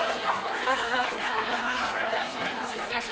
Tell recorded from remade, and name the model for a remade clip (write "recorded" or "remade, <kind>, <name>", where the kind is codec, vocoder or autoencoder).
remade, codec, SNAC